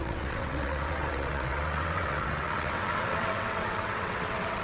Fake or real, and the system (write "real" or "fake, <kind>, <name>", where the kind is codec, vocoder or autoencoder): fake, vocoder, WaveNeXt